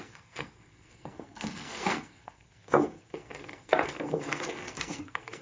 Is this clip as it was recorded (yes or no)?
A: no